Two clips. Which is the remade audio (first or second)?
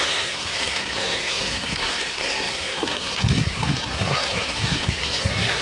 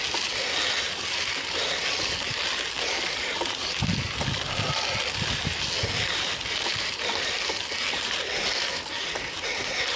first